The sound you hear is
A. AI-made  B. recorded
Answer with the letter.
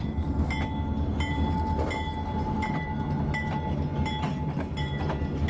B